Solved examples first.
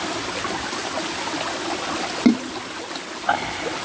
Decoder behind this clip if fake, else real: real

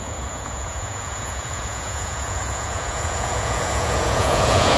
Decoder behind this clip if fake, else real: fake, vocoder, Vocos